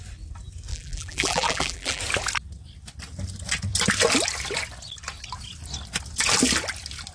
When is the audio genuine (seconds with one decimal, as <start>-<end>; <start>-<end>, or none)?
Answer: 0.0-0.7; 2.0-7.1